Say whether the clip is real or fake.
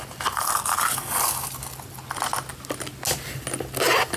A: real